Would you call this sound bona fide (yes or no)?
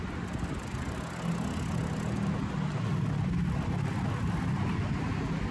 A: yes